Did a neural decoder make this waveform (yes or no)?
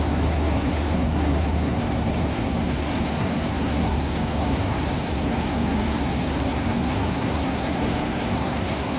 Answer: yes